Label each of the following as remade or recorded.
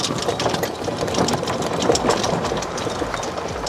remade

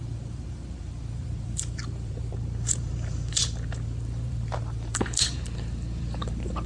remade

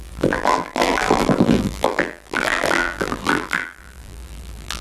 remade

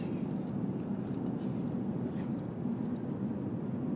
recorded